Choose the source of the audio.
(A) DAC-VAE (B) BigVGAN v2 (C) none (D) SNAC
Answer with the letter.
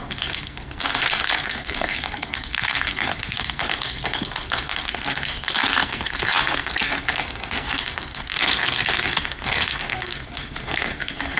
D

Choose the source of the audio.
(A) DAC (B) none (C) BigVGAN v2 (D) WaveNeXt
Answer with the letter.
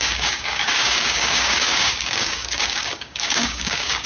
A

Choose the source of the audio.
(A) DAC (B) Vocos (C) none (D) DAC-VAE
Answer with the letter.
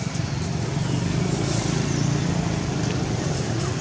C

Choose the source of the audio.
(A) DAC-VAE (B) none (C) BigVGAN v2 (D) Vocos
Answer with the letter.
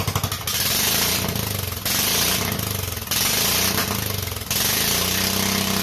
B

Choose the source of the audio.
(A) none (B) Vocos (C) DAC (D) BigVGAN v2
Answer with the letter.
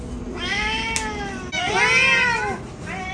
A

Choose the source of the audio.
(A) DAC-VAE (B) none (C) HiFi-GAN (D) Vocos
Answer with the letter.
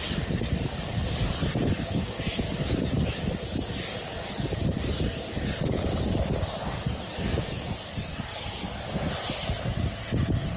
B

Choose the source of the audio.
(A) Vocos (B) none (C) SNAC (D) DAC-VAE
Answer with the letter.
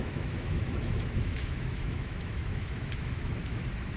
D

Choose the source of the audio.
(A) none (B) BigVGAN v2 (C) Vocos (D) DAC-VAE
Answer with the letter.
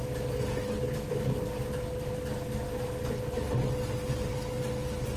A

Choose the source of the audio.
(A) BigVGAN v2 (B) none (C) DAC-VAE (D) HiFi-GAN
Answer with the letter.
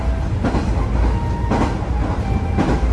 B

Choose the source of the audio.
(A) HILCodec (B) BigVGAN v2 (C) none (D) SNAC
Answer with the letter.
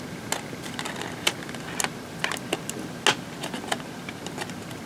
C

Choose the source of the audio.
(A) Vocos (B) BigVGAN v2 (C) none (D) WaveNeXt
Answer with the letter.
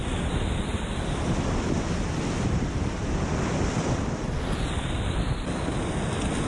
B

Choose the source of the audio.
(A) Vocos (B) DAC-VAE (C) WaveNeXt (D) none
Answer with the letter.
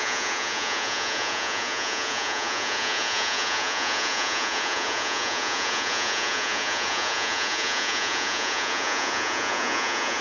A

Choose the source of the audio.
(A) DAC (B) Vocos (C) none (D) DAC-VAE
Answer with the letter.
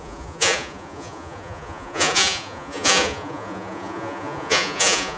B